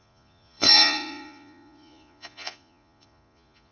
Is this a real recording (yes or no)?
no